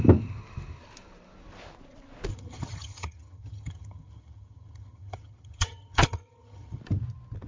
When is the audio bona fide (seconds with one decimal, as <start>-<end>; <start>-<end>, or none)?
0.0-2.3; 6.8-7.5